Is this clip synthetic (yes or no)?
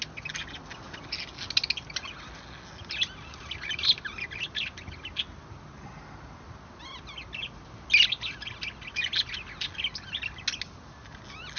no